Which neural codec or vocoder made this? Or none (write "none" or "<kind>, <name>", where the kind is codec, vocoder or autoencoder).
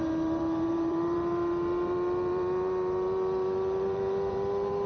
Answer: vocoder, BigVGAN v2